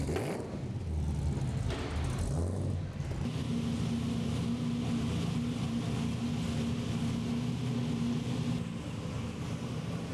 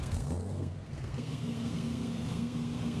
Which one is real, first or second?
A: first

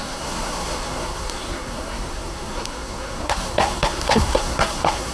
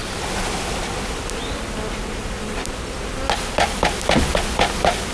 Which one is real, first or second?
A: second